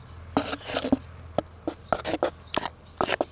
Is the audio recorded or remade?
recorded